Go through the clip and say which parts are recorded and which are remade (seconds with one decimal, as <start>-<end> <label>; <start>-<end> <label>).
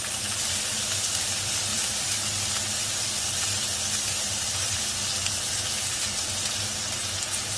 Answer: 0.0-1.7 recorded; 1.7-5.0 remade; 5.0-7.6 recorded